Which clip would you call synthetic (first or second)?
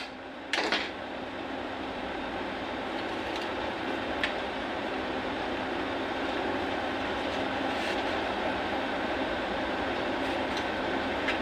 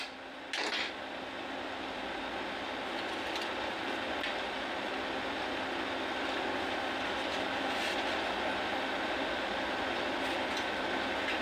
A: first